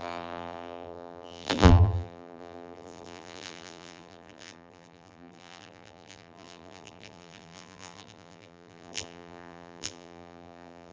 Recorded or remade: remade